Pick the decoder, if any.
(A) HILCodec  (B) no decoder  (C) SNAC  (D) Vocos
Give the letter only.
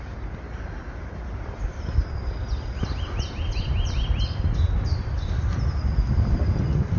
B